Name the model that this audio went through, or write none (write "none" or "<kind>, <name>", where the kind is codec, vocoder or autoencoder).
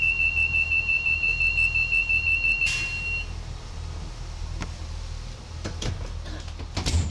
none